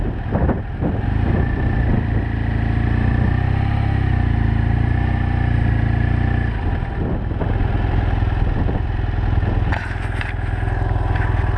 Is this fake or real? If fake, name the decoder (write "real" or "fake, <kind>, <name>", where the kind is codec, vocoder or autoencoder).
real